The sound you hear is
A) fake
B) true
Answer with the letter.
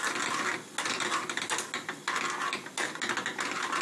B